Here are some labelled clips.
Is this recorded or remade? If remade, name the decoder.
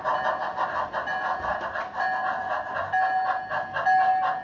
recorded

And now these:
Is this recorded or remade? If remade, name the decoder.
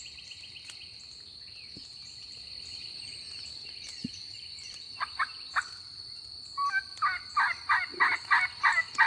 recorded